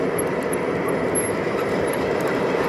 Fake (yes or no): no